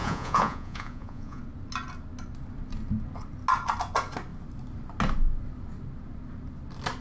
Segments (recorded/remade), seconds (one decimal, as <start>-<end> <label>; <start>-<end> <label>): 0.0-1.4 remade; 1.4-7.0 recorded